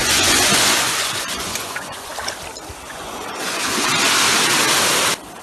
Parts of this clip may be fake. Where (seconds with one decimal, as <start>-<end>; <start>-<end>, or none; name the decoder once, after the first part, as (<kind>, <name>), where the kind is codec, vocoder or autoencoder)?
0.0-2.1 (vocoder, Vocos); 2.9-3.9